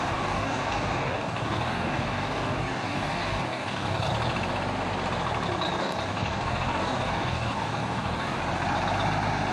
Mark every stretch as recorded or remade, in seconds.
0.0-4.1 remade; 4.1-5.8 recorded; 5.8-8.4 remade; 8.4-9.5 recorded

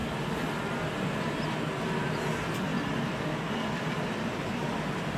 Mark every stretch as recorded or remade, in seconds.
0.0-5.2 recorded

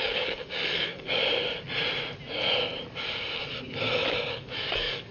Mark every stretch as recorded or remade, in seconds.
0.0-1.2 remade; 1.2-4.3 recorded; 4.3-5.1 remade